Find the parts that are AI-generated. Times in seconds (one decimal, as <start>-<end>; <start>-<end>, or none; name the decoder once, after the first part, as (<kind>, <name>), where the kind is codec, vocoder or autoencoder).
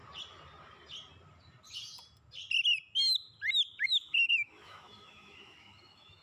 3.7-6.2 (autoencoder, DAC-VAE)